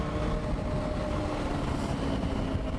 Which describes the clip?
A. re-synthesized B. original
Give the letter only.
B